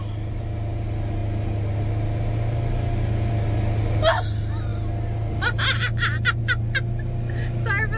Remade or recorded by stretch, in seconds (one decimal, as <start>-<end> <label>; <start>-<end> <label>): 0.0-8.0 recorded